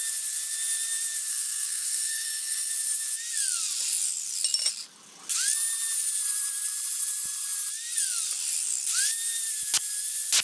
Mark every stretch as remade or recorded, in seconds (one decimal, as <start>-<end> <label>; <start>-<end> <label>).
0.0-1.3 recorded; 1.3-2.7 remade; 2.7-10.4 recorded

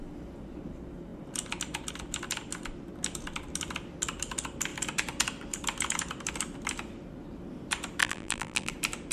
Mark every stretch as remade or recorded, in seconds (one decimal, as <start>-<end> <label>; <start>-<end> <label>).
0.0-8.0 recorded; 8.0-8.7 remade; 8.7-9.1 recorded

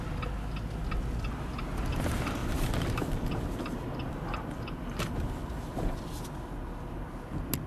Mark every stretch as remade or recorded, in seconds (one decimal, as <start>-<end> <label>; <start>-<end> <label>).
0.0-2.4 recorded; 2.4-6.0 remade; 6.0-7.7 recorded

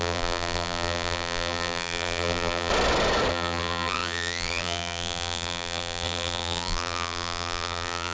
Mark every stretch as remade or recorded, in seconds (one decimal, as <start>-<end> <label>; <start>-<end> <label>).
0.0-2.7 remade; 2.7-3.3 recorded; 3.3-8.1 remade

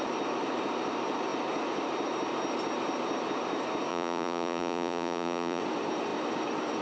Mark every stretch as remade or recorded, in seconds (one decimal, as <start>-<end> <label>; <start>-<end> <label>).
0.0-3.9 recorded; 3.9-5.6 remade; 5.6-6.8 recorded

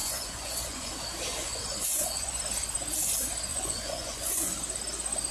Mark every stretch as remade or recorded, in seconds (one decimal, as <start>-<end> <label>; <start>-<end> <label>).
0.0-0.9 remade; 0.9-1.3 recorded; 1.3-2.4 remade; 2.4-3.5 recorded; 3.5-4.4 remade; 4.4-5.3 recorded